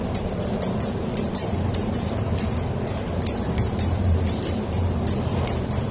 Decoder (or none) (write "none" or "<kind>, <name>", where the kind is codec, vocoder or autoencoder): vocoder, BigVGAN v2